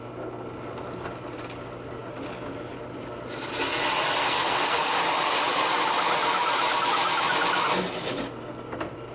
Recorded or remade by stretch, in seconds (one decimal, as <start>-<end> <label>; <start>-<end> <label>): 0.0-4.2 recorded; 4.2-4.9 remade; 4.9-9.1 recorded